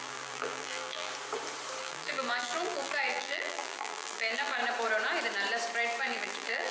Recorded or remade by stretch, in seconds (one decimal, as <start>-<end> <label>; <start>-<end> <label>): 0.0-1.1 remade; 1.1-1.8 recorded; 1.8-4.6 remade; 4.6-6.0 recorded; 6.0-6.7 remade